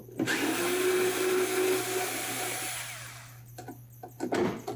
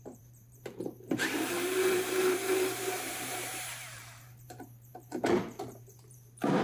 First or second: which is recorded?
first